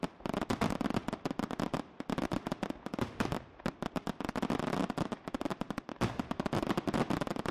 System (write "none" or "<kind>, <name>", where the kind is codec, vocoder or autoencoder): none